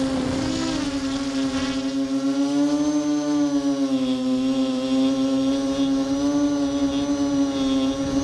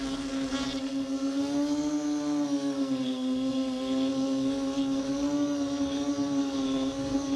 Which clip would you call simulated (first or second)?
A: second